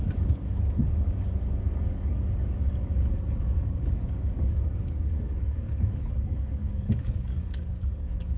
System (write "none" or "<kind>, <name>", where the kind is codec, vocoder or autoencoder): codec, DAC